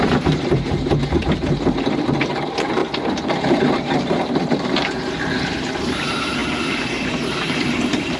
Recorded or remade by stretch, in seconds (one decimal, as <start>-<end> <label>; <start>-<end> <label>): 0.0-8.2 remade